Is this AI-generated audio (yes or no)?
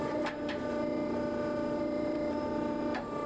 yes